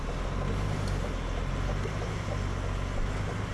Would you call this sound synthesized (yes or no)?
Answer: no